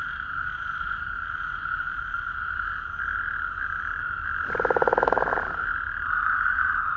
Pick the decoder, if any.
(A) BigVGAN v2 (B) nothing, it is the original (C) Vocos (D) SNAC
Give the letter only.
B